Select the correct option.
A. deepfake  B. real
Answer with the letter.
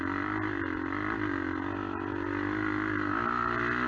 B